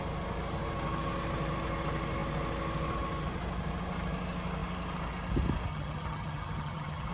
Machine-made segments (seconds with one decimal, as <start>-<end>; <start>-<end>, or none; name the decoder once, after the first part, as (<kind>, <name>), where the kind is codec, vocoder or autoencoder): 5.7-7.1 (vocoder, HiFi-GAN)